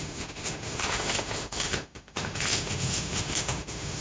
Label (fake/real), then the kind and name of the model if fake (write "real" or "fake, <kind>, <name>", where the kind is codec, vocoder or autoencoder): fake, autoencoder, DAC-VAE